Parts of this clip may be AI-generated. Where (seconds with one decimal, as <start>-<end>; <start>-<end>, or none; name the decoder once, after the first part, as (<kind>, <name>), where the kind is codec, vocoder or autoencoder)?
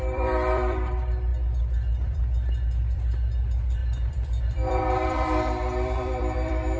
0.0-6.8 (vocoder, BigVGAN v2)